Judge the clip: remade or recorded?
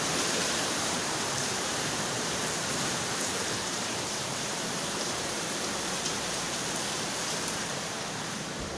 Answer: remade